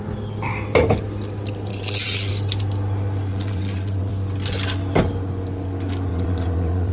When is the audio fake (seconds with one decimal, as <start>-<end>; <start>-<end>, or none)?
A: 1.7-2.3; 3.3-4.1; 6.1-6.9